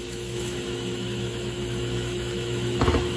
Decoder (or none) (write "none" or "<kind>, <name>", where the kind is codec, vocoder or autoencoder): autoencoder, DAC-VAE